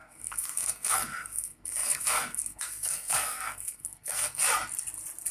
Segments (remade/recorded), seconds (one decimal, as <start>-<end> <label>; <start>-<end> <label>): 0.0-4.4 remade; 4.4-5.3 recorded